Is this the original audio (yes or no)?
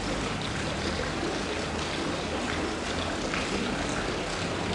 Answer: yes